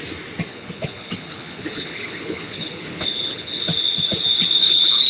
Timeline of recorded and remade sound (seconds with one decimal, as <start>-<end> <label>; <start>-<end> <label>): 0.0-0.5 recorded; 0.5-3.6 remade; 3.6-4.6 recorded; 4.6-5.1 remade